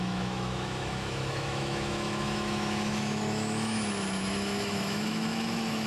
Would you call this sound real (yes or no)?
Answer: no